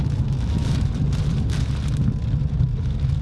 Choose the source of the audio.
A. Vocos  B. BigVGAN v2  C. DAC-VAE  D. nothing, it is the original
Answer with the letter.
D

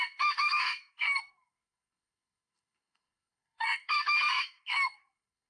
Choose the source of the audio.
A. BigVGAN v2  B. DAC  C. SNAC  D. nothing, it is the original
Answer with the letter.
C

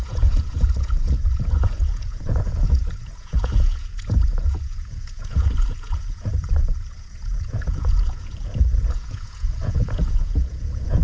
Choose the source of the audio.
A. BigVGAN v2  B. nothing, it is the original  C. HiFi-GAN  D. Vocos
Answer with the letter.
D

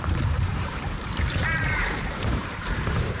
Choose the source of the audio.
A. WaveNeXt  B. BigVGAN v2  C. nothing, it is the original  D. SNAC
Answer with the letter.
B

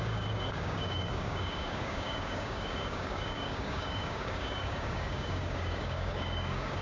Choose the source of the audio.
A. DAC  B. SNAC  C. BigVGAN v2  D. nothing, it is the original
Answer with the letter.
A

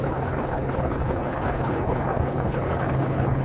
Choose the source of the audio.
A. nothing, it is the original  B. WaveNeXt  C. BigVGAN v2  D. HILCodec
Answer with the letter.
D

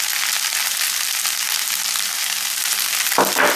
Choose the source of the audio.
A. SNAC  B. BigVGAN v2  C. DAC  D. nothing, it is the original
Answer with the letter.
D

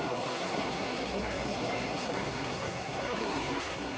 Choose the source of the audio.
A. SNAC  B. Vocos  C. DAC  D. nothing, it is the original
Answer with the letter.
A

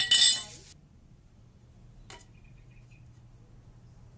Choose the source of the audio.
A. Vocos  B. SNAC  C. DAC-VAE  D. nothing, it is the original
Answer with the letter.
D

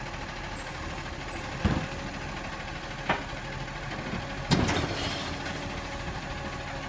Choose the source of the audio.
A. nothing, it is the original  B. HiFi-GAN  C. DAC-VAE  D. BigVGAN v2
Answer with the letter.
A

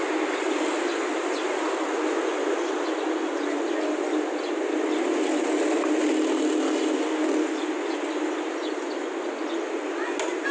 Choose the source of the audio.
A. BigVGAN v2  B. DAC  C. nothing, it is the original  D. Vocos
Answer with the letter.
C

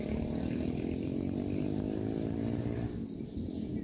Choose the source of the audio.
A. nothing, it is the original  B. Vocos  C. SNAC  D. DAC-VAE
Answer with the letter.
A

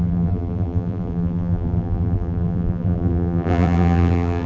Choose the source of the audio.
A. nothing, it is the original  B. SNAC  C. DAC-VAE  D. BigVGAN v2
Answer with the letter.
D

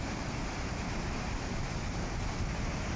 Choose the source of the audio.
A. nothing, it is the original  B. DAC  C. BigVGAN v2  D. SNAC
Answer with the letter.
C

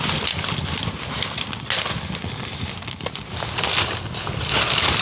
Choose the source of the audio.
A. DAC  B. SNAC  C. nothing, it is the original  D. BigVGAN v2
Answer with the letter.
C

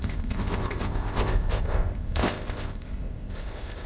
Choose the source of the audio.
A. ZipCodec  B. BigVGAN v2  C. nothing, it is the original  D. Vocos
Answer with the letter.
A